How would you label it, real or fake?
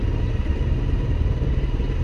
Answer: real